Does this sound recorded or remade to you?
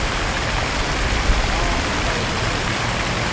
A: recorded